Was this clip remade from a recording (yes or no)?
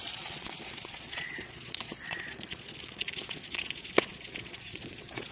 yes